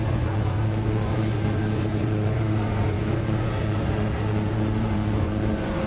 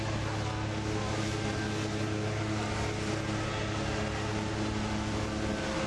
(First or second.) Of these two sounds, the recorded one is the second